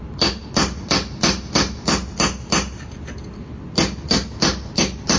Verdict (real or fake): real